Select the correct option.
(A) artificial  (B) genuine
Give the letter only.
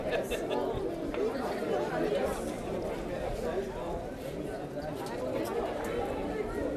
B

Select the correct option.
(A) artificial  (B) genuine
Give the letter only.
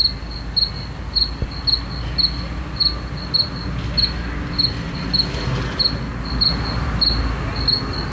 B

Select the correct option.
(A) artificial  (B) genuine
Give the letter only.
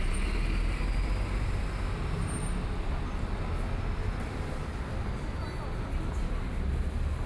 B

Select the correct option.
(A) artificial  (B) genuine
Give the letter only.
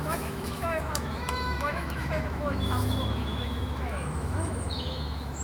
A